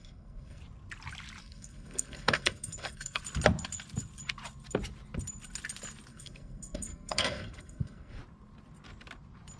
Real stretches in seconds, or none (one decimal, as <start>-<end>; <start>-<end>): 0.6-1.4; 3.2-6.1; 8.2-9.6